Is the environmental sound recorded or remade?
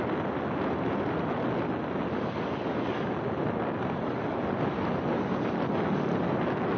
recorded